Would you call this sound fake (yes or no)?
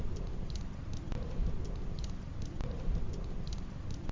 no